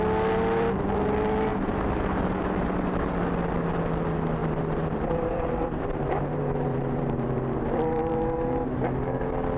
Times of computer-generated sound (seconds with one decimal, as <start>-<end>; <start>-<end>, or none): 1.5-3.1; 4.4-8.1